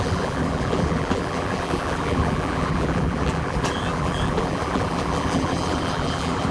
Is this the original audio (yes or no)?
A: no